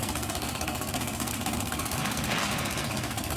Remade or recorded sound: remade